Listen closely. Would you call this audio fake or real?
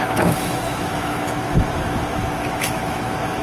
fake